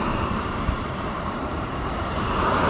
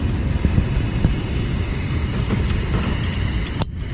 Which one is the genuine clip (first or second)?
second